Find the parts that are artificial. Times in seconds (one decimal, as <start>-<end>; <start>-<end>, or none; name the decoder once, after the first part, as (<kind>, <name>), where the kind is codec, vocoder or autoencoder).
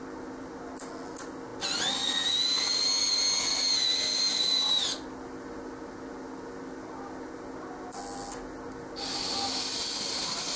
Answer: none